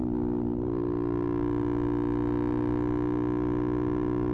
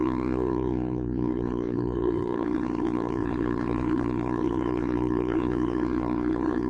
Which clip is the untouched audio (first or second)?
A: first